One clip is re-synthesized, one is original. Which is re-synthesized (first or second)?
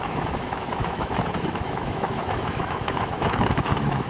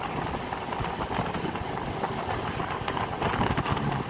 first